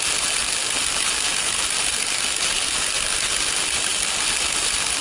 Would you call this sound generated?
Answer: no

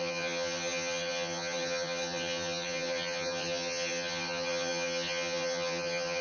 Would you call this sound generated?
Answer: yes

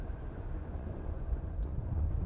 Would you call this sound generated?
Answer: yes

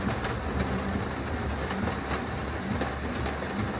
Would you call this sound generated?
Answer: no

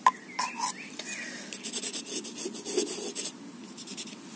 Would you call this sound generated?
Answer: no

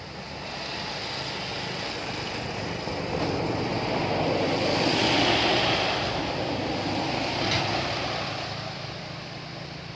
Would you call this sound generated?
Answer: no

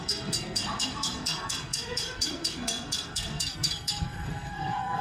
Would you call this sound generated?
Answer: yes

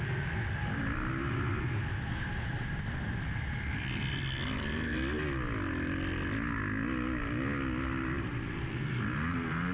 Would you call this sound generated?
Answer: no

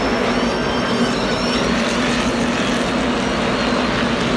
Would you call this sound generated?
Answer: no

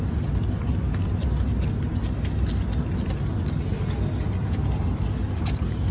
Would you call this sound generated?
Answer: no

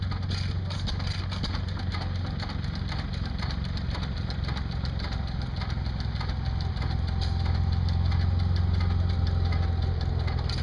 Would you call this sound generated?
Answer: no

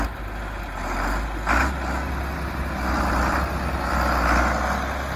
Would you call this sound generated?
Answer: no